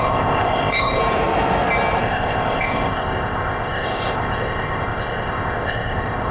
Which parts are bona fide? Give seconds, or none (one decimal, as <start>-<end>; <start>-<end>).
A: 1.0-2.0